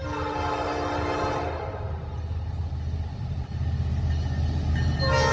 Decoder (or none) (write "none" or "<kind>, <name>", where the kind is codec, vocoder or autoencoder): none